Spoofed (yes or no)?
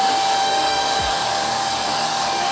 yes